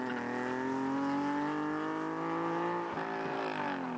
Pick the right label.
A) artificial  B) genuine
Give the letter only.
B